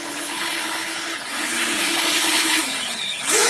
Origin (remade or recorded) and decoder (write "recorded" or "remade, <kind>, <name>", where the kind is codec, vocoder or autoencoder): remade, codec, HILCodec